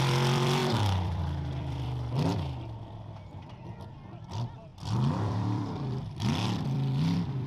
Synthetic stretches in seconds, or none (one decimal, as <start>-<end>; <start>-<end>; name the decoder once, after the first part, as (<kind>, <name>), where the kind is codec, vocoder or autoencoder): 0.0-2.3 (vocoder, BigVGAN v2); 3.4-7.5